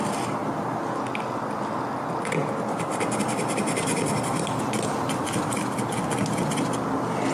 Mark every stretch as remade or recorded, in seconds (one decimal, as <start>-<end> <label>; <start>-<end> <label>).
0.0-7.3 recorded